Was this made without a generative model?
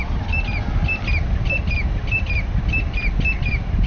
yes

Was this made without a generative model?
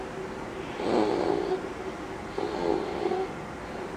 yes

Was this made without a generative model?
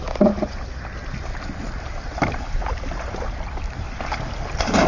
yes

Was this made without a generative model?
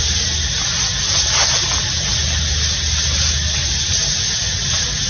yes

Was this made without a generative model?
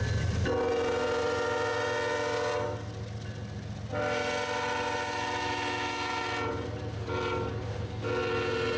yes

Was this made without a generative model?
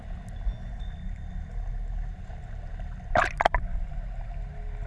yes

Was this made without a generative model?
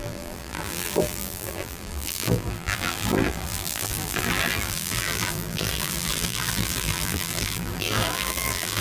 no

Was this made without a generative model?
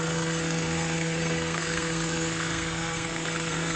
no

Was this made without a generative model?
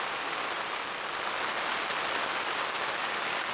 yes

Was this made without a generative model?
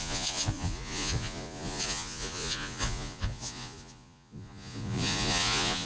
no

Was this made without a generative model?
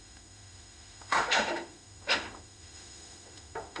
no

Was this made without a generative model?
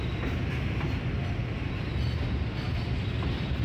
yes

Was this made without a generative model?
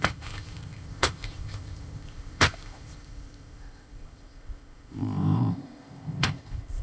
no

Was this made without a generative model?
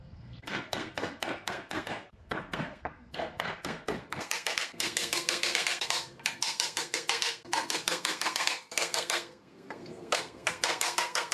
no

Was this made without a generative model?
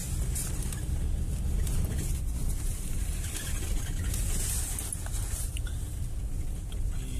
yes